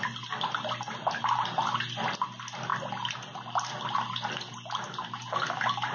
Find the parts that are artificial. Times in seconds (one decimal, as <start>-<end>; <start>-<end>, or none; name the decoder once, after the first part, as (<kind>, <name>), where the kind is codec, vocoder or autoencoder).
none